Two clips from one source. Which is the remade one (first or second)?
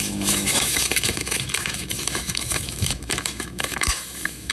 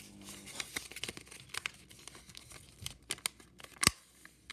first